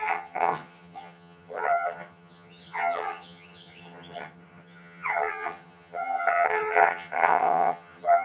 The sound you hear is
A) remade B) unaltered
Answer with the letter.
A